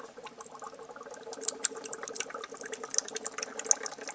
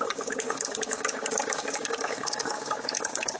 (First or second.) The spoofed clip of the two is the second